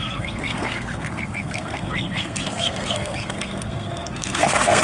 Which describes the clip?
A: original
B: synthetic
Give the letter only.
B